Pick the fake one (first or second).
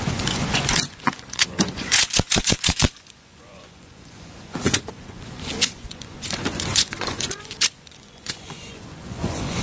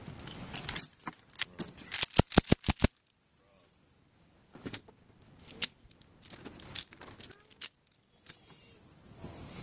first